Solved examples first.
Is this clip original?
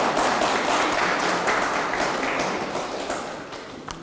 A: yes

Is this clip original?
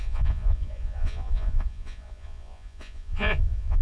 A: no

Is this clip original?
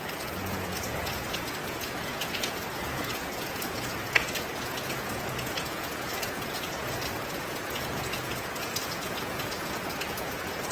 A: no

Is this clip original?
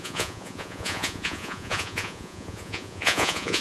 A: no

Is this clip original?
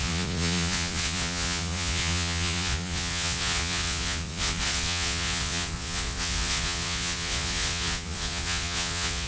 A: no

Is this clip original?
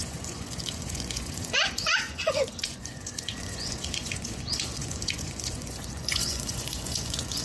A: no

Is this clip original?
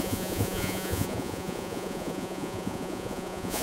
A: no